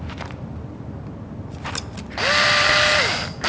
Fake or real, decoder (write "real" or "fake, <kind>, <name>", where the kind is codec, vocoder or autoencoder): real